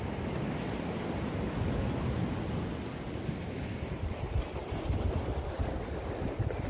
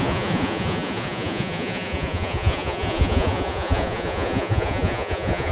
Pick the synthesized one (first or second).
second